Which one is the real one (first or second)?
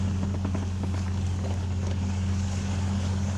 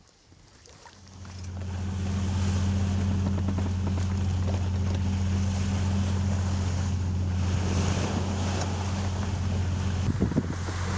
second